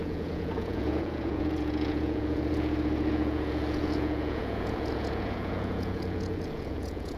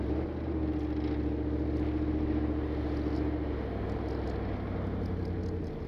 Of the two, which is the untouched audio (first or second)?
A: second